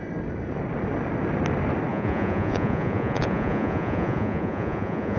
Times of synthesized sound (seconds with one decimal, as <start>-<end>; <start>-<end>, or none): 1.9-5.2